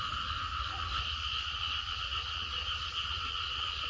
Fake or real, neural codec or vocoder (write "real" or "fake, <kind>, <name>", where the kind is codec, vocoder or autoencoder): real